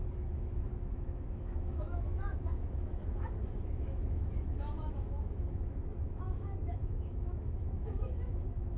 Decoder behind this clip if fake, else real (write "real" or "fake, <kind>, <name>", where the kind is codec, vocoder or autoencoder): fake, autoencoder, DAC-VAE